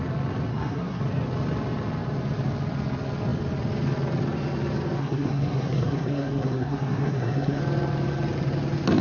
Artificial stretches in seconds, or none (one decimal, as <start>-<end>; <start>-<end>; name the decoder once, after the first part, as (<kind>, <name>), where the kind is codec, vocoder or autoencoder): 0.5-1.0 (codec, SNAC); 5.0-7.6